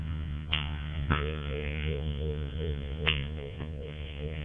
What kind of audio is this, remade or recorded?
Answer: remade